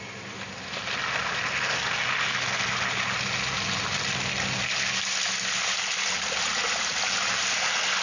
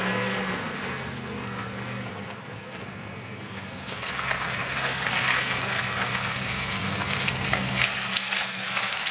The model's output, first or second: second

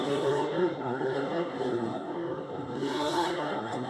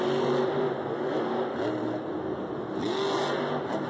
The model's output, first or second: first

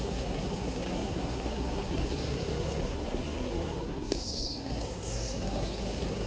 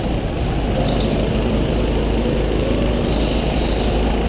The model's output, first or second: first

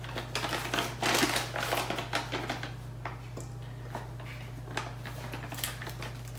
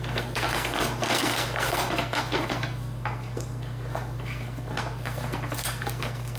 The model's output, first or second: second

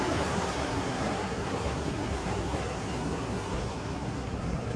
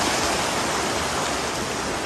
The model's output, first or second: first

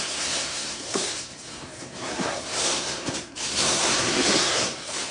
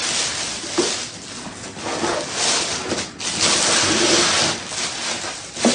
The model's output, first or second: first